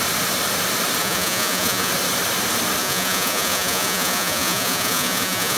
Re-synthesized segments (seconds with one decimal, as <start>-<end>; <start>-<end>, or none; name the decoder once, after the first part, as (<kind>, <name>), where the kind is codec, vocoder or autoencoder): 1.0-1.9 (vocoder, Vocos); 2.8-5.6